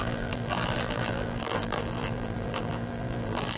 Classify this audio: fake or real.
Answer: fake